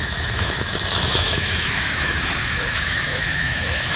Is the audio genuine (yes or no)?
no